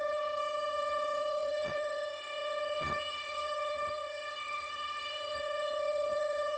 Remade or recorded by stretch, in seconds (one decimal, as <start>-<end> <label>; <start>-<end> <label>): 0.0-6.6 remade